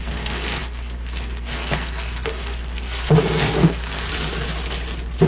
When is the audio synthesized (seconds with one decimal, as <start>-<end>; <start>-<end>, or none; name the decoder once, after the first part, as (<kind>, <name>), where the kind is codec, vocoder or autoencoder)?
0.0-4.1 (codec, SNAC)